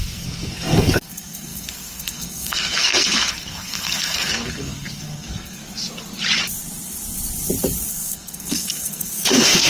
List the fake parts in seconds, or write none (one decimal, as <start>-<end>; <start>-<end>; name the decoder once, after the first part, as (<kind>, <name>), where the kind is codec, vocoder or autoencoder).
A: 0.0-5.6 (codec, SNAC); 7.9-9.7